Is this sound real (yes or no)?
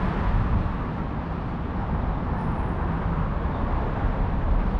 yes